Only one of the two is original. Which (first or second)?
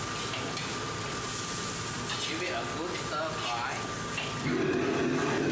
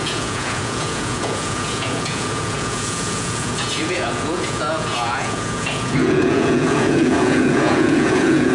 first